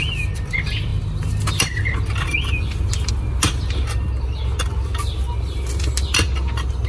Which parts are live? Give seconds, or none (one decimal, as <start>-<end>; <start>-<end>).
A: 0.0-6.9

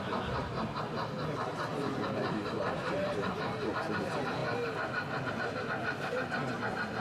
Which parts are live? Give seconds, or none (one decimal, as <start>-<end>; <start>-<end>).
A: 0.0-1.7; 3.3-7.0

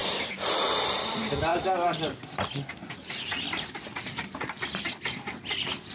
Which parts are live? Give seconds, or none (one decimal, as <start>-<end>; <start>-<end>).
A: 0.0-5.9

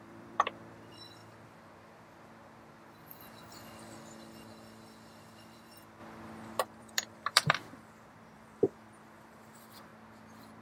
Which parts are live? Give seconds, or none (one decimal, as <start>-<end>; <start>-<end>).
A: 1.2-5.2; 6.0-6.6; 9.9-10.6

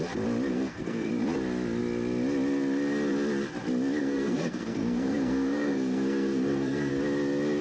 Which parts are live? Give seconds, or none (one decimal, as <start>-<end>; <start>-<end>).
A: 0.0-0.5; 1.1-4.0; 6.9-7.6

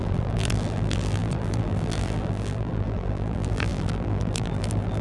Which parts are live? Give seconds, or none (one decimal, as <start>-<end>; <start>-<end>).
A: none